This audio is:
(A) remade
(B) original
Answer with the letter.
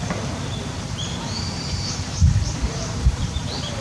A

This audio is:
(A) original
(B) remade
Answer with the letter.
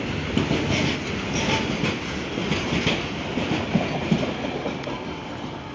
A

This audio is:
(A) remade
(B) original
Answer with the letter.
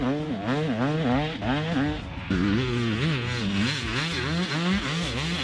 B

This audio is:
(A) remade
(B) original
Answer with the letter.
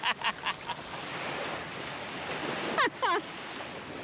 B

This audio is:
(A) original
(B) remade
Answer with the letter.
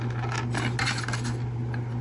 A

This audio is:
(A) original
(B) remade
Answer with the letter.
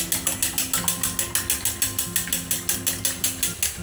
A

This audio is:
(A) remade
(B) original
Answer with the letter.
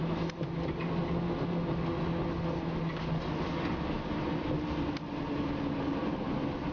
B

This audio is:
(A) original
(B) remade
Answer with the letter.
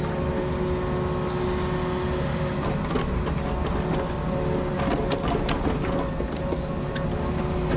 A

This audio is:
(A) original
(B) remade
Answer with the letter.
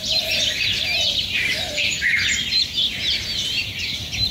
B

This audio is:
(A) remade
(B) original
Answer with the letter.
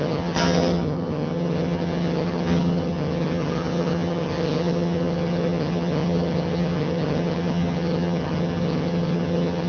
A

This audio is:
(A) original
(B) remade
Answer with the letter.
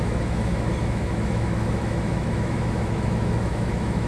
B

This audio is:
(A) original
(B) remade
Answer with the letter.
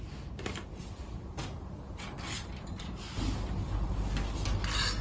A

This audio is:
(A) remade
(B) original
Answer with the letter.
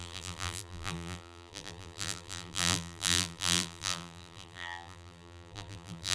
A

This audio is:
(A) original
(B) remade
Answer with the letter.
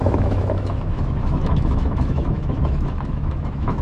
B